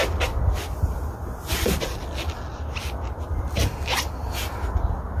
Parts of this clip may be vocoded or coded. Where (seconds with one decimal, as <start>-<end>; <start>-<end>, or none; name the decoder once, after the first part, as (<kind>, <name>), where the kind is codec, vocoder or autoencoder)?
2.5-3.6 (vocoder, BigVGAN v2)